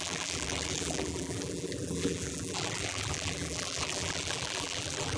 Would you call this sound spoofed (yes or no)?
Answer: yes